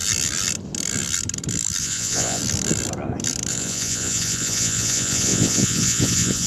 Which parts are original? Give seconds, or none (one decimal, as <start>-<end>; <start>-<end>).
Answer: 0.0-1.8; 2.4-3.5